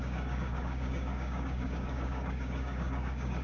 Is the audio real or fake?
fake